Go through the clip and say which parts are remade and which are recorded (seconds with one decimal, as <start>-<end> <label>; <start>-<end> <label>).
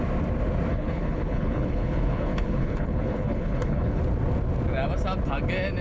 0.0-0.7 recorded; 0.7-4.0 remade; 4.0-5.8 recorded